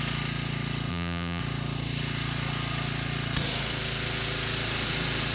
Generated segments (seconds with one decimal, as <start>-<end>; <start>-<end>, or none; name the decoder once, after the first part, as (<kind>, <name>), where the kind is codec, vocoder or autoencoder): 0.9-1.4 (vocoder, BigVGAN v2)